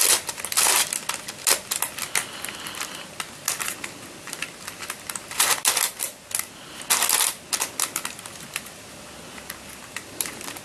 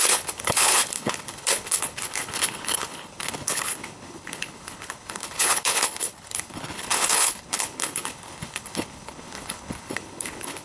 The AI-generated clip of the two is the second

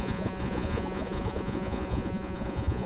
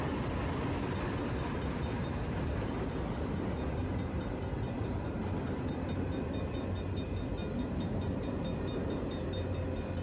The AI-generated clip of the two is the first